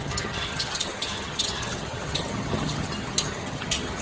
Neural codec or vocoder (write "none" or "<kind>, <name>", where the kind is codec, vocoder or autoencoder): vocoder, HiFi-GAN